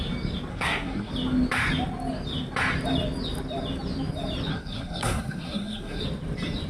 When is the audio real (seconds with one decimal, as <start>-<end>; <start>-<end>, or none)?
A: 0.0-0.5; 1.1-4.5; 6.0-6.7